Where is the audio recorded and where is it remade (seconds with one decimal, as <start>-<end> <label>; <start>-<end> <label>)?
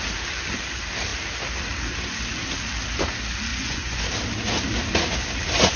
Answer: 0.0-3.5 recorded; 3.5-4.0 remade; 4.0-5.8 recorded